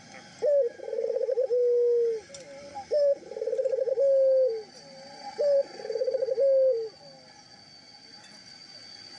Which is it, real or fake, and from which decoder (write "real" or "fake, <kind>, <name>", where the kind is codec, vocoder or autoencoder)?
real